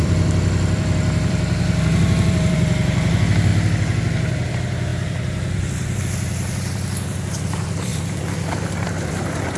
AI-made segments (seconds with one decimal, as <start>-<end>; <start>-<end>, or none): 0.0-3.5; 4.5-9.6